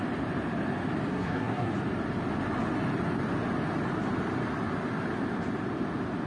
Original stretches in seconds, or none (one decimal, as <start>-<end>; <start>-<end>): 0.0-1.1; 1.7-6.3